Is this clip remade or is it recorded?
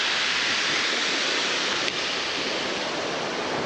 recorded